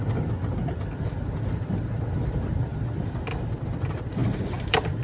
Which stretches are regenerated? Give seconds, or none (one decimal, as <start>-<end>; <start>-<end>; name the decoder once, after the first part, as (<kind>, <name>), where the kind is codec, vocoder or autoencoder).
2.7-3.2 (vocoder, BigVGAN v2); 4.2-5.0